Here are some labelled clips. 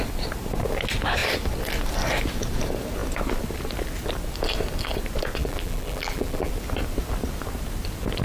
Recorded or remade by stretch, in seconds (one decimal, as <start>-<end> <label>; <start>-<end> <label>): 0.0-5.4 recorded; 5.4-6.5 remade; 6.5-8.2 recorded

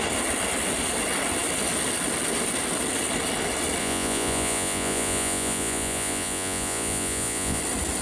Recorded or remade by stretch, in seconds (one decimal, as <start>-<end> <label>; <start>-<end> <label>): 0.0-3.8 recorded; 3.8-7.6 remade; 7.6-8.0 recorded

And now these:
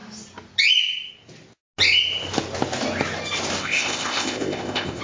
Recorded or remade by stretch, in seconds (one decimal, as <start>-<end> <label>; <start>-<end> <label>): 0.0-3.6 recorded; 3.6-5.0 remade